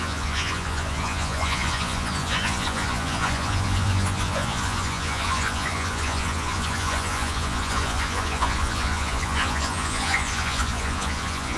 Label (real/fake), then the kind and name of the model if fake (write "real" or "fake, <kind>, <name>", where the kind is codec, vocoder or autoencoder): fake, vocoder, Vocos